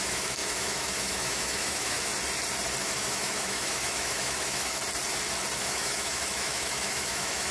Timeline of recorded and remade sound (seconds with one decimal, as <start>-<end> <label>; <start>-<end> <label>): 0.0-2.1 remade; 2.1-2.8 recorded; 2.8-4.8 remade; 4.8-5.6 recorded; 5.6-7.5 remade